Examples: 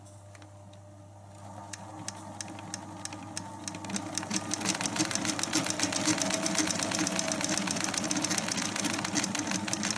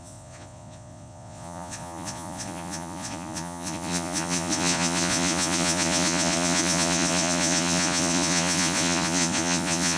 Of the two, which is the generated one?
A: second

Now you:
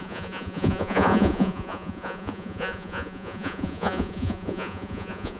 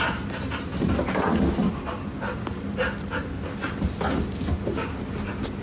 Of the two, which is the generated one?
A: first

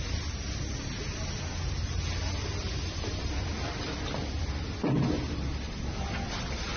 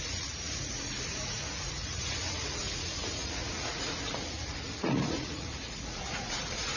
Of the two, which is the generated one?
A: second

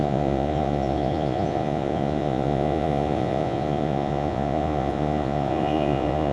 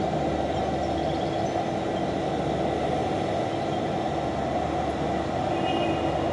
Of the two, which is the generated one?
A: first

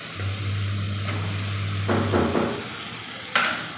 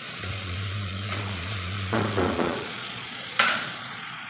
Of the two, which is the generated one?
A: second